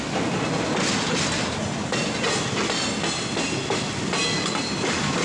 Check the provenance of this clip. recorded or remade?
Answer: recorded